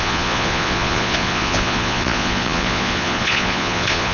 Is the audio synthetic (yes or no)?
yes